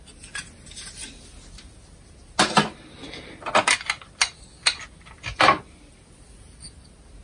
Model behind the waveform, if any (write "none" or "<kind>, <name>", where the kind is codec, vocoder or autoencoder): none